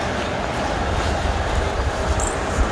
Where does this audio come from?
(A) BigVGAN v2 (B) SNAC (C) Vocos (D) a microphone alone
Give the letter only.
D